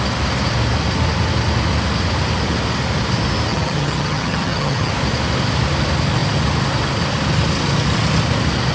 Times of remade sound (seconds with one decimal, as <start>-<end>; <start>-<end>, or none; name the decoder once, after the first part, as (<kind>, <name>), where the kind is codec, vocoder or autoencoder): 3.5-4.9 (vocoder, HiFi-GAN)